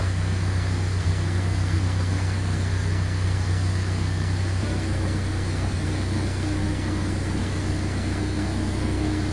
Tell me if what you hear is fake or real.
fake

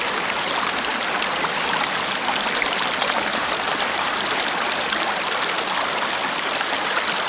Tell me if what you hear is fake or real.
real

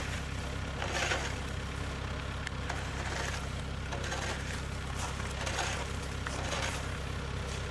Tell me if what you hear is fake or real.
real